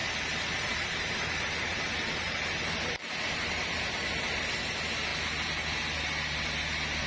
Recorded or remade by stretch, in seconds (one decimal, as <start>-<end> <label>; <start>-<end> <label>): 0.0-4.3 remade; 4.3-7.1 recorded